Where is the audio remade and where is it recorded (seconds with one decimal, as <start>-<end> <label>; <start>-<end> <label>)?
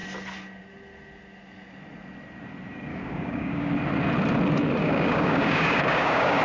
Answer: 0.0-2.9 recorded; 2.9-3.7 remade; 3.7-4.8 recorded; 4.8-6.4 remade